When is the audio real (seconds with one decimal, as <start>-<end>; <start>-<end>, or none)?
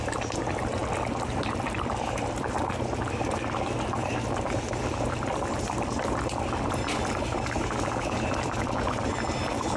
0.8-1.4